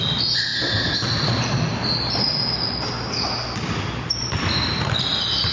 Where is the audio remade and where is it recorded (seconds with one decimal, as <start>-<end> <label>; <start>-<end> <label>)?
0.0-5.5 recorded